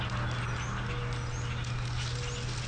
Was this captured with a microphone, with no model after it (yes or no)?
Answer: yes